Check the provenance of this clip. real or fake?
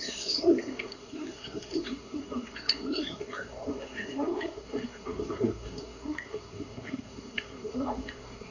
fake